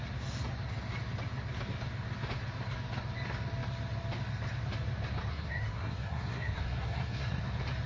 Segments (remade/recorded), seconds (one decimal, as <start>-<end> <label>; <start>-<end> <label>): 0.0-5.3 recorded; 5.3-7.4 remade; 7.4-7.9 recorded